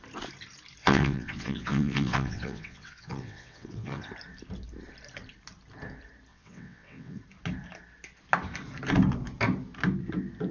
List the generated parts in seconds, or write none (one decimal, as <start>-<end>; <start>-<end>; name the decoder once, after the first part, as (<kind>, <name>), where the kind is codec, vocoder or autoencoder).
0.8-4.1 (vocoder, WaveNeXt); 6.3-7.2